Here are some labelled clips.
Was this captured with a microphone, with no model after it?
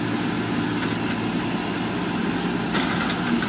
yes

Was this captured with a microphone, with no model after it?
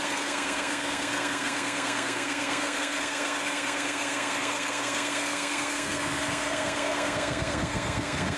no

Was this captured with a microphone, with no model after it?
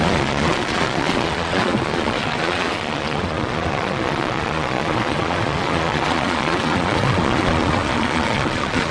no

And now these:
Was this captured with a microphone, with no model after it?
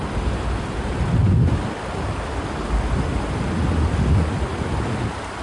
yes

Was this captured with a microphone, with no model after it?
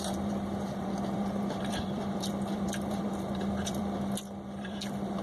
no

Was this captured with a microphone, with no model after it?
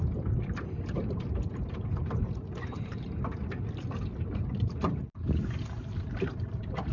no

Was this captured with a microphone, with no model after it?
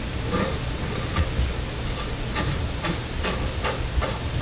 yes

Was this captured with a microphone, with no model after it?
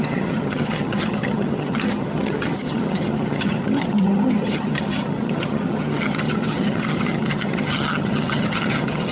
no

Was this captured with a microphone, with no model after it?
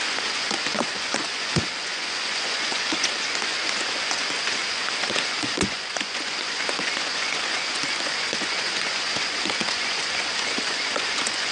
no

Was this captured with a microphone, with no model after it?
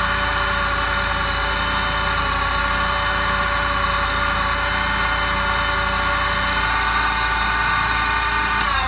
yes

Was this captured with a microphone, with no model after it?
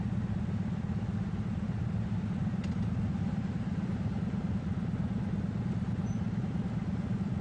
yes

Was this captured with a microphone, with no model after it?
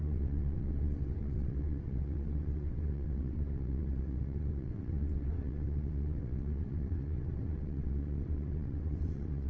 no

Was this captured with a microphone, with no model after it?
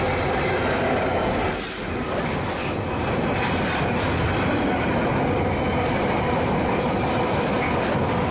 yes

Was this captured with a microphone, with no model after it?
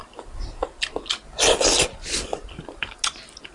yes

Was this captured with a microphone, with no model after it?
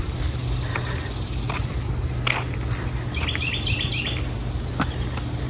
yes